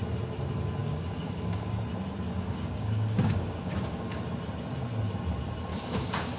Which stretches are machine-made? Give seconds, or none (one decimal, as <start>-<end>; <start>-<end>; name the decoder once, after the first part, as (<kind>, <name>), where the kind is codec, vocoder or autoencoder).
0.8-1.7 (codec, DAC); 2.4-4.2; 5.7-6.4